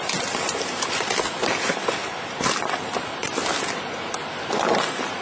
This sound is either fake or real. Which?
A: real